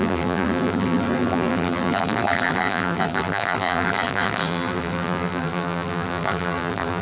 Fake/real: fake